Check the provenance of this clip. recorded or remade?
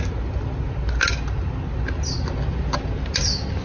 recorded